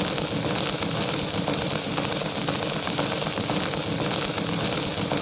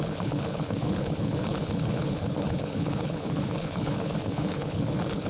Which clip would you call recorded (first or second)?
first